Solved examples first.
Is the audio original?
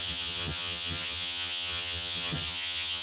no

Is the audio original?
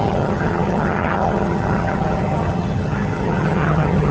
no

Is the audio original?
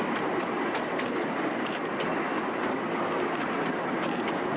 yes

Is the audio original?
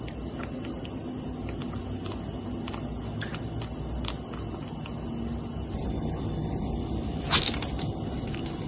yes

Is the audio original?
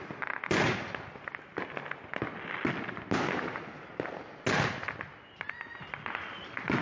yes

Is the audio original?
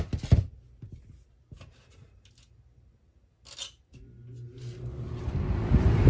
yes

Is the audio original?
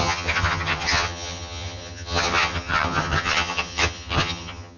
no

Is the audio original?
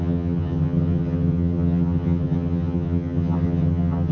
no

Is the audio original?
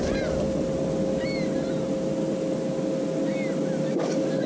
yes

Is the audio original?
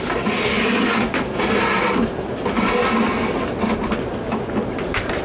yes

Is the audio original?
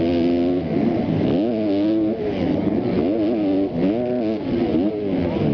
yes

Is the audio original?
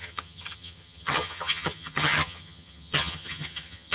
no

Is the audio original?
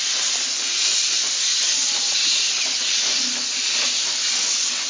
yes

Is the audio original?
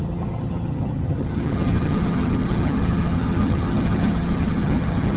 no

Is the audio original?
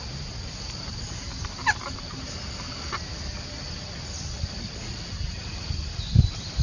yes